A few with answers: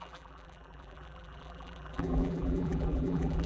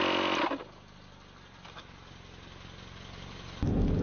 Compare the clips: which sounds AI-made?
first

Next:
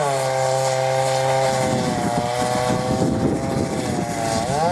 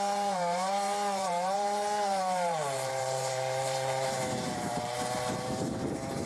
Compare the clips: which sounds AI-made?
second